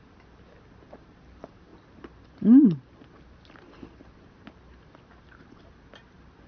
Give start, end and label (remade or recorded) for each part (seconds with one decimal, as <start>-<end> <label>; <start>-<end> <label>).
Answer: 0.0-6.5 recorded